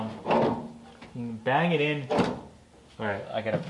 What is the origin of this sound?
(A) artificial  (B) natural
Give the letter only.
B